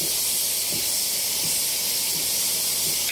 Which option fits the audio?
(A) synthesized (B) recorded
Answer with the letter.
B